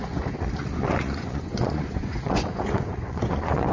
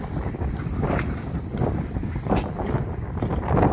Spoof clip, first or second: first